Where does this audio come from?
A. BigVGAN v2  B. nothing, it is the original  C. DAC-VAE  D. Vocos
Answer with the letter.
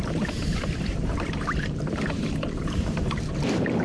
A